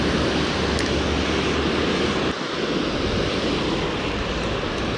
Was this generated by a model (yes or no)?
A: no